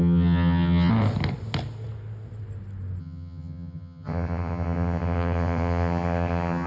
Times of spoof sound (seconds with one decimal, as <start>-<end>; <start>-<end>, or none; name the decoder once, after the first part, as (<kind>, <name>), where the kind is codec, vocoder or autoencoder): 0.0-0.9 (vocoder, HiFi-GAN); 3.0-6.7